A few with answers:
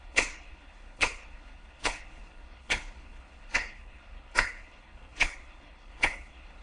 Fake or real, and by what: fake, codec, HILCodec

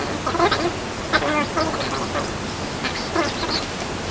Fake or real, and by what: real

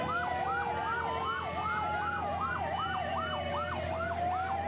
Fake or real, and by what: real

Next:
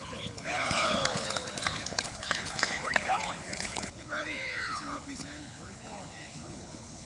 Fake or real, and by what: fake, codec, HILCodec